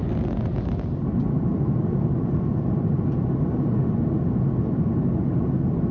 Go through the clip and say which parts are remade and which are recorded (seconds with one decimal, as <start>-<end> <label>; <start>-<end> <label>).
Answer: 0.0-5.9 recorded